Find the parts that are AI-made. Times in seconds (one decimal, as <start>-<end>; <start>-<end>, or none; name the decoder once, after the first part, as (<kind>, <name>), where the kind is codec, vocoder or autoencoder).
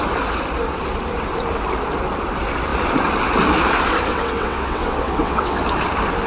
4.1-5.6 (vocoder, WaveNeXt)